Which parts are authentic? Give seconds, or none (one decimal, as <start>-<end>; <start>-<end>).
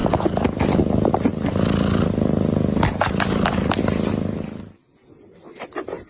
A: 0.0-6.1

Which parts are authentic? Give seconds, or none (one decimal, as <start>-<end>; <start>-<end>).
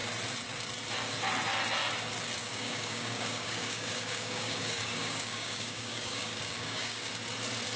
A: 0.0-2.4; 7.1-7.8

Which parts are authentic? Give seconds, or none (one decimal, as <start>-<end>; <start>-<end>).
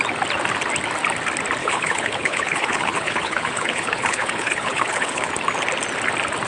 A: 0.0-1.6; 5.3-6.5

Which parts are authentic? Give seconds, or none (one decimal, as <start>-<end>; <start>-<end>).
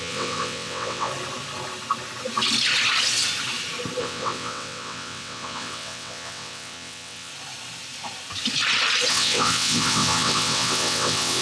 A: 1.1-4.0; 7.3-9.1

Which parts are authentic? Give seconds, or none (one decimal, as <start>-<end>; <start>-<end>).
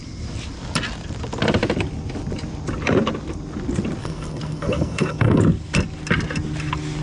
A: 0.0-4.0; 5.4-7.0